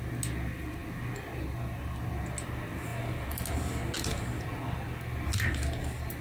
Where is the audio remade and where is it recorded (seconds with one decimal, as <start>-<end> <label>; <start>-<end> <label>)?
0.0-6.2 recorded